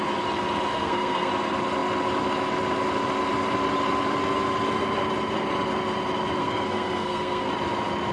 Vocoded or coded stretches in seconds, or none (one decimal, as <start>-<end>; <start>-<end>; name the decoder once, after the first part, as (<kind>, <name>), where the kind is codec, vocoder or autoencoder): 0.7-1.3 (codec, SNAC); 6.4-7.5